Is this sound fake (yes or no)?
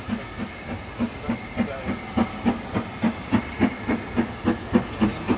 no